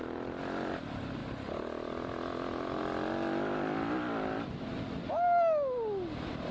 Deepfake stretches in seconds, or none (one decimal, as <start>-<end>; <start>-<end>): none